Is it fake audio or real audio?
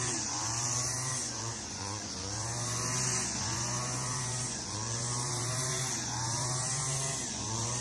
fake